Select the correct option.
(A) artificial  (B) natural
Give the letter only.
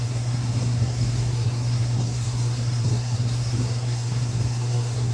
A